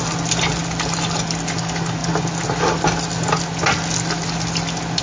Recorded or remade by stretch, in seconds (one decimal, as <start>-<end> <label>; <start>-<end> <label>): 0.0-5.0 recorded